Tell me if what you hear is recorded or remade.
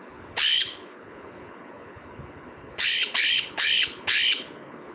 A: remade